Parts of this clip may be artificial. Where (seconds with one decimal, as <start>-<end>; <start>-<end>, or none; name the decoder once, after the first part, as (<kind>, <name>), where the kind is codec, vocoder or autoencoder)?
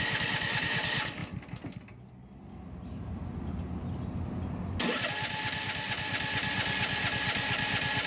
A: none